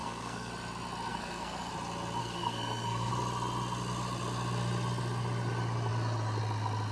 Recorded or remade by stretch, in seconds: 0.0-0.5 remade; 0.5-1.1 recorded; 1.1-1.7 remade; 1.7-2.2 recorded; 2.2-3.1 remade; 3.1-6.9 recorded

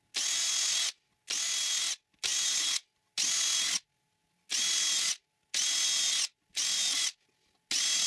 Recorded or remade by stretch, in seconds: 0.0-8.1 recorded